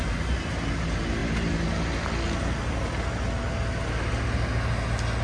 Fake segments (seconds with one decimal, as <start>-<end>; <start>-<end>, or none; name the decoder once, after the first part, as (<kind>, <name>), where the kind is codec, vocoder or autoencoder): none